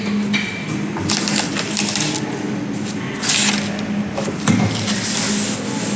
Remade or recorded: recorded